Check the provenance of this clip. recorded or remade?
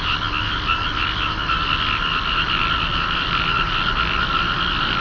recorded